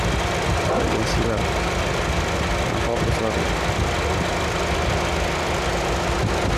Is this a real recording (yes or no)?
yes